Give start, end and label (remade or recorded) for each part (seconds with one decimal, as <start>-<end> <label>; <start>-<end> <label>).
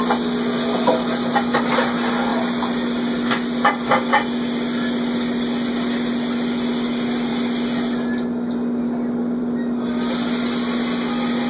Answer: 0.0-11.5 recorded